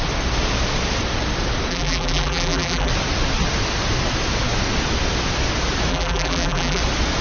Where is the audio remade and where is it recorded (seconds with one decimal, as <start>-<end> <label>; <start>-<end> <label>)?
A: 0.0-1.7 recorded; 1.7-2.9 remade; 2.9-5.9 recorded; 5.9-6.8 remade; 6.8-7.2 recorded